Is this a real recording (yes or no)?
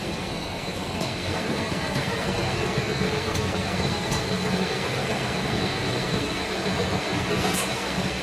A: no